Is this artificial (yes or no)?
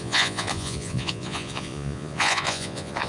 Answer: yes